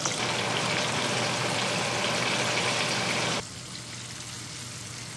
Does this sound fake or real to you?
real